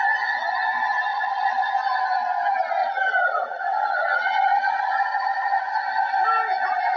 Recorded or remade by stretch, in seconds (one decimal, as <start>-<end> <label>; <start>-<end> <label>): 0.0-1.1 recorded; 1.1-1.7 remade; 1.7-2.8 recorded; 2.8-5.6 remade; 5.6-7.0 recorded